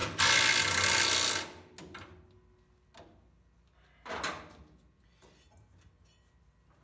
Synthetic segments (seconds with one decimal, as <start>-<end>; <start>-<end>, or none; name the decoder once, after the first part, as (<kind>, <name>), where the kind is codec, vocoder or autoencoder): none